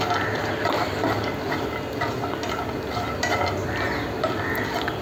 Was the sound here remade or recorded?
recorded